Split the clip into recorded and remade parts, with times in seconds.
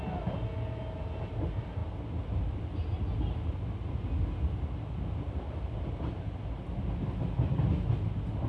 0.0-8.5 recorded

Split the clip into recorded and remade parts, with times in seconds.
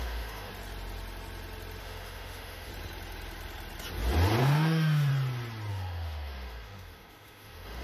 0.0-0.5 remade; 0.5-1.8 recorded; 1.8-2.7 remade; 2.7-4.4 recorded; 4.4-5.1 remade; 5.1-5.7 recorded; 5.7-7.8 remade